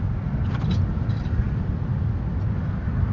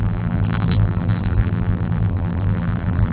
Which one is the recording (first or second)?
first